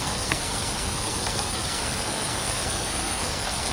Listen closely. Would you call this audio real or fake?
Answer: fake